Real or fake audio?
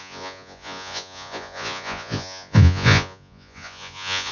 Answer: fake